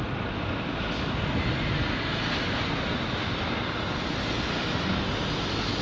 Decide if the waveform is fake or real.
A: real